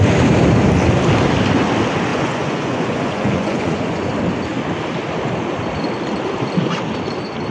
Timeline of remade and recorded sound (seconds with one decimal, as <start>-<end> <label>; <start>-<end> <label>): 0.0-2.1 recorded; 2.1-4.1 remade; 4.1-7.5 recorded